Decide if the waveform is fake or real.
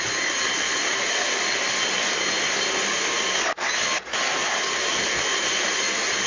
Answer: real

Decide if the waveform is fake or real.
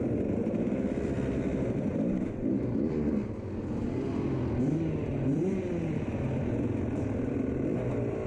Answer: fake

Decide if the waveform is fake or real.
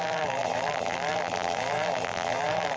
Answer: fake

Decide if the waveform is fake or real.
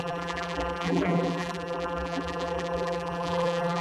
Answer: fake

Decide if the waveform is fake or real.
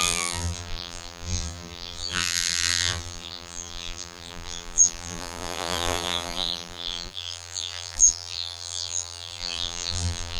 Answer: fake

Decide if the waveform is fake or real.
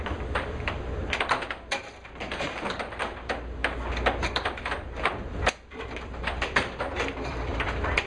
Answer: fake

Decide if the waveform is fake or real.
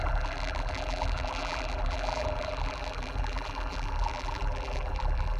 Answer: fake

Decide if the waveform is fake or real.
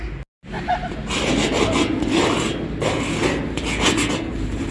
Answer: real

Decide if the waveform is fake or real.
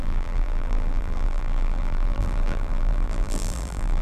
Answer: fake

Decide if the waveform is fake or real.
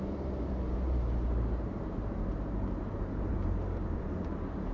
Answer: fake